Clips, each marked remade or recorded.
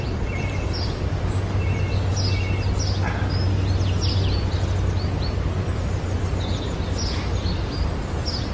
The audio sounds recorded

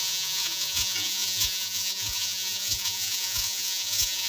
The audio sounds remade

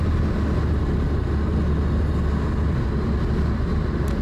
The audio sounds recorded